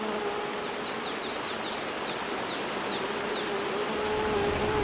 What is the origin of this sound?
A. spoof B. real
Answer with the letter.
B